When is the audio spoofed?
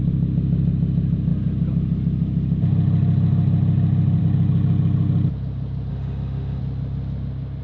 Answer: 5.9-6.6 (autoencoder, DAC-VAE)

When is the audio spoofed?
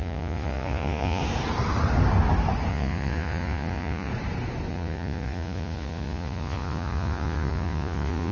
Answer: 0.0-1.2 (vocoder, Vocos); 2.7-4.1; 4.7-8.3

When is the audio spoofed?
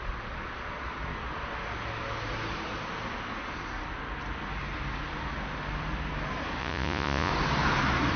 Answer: 6.6-7.3 (vocoder, Vocos)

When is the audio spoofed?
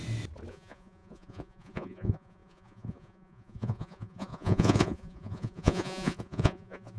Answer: 0.5-7.0 (vocoder, Vocos)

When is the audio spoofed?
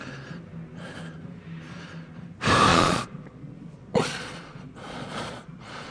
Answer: 2.7-5.9 (vocoder, Vocos)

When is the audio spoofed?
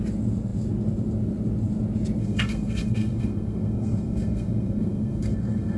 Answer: 2.2-5.8 (codec, SNAC)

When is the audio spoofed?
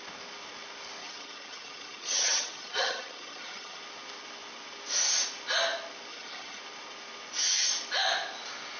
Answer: 1.0-3.8 (vocoder, HiFi-GAN); 6.1-6.6